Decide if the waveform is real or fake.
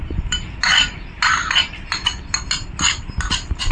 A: real